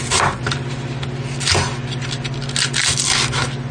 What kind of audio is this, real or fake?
real